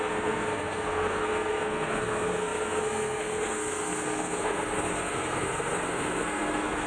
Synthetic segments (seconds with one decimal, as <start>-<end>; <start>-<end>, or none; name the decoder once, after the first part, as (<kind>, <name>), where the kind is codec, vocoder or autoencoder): 0.0-6.9 (codec, SNAC)